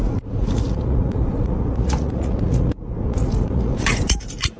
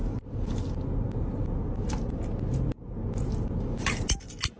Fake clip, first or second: first